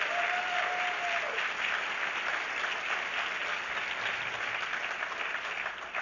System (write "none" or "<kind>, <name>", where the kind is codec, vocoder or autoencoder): none